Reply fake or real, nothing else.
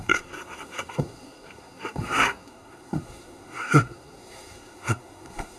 fake